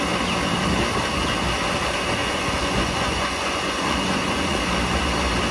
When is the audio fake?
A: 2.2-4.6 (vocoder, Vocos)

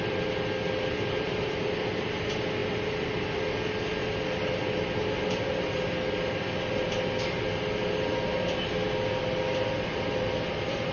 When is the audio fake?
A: none

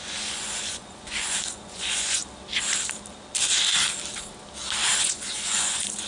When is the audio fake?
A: 0.0-2.2 (vocoder, Vocos); 5.0-6.1

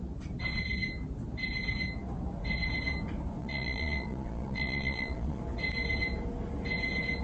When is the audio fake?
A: 3.4-5.4 (vocoder, Vocos)

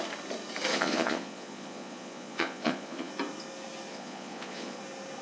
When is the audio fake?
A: 0.7-3.1 (vocoder, Vocos); 3.9-4.8

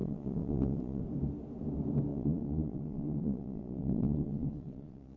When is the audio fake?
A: 0.0-1.0 (vocoder, Vocos); 2.1-5.2